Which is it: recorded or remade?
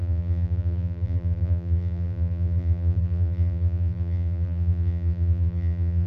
remade